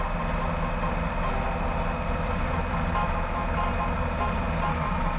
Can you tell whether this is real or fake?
real